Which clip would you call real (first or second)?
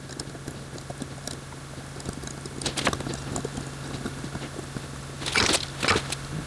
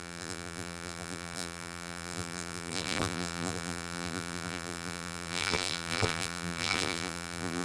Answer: first